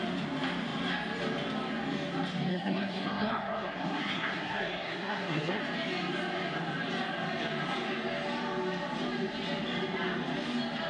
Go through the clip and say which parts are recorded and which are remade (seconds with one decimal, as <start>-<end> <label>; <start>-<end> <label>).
0.0-2.5 recorded; 2.5-5.6 remade; 5.6-10.9 recorded